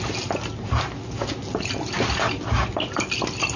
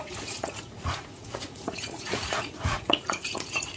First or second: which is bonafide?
first